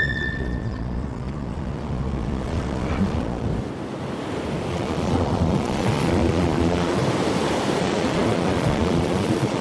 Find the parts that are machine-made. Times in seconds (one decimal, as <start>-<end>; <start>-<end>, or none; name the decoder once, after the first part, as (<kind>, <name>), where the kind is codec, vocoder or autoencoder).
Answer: 0.0-3.5 (vocoder, Vocos); 4.7-7.0; 7.8-9.6